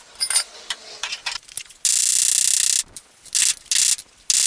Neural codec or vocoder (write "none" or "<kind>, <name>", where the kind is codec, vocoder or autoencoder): none